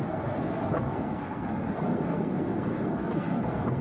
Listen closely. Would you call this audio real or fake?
fake